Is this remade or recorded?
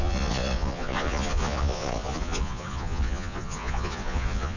remade